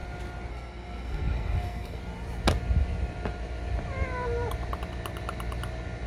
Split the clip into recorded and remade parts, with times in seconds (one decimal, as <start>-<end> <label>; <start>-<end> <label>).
0.0-0.5 recorded; 0.5-2.0 remade; 2.0-6.1 recorded